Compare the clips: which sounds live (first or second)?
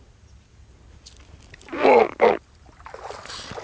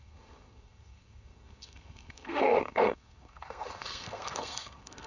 first